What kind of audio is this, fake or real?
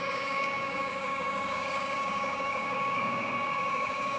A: fake